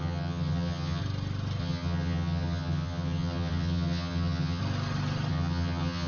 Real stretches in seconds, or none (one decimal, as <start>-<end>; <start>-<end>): 1.0-1.6; 4.6-5.3